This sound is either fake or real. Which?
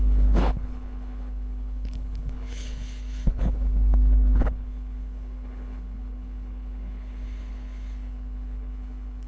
fake